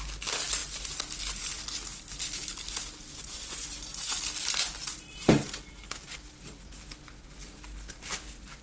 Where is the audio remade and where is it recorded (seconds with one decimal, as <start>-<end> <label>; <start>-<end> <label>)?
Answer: 0.0-3.1 recorded; 3.1-4.2 remade; 4.2-8.6 recorded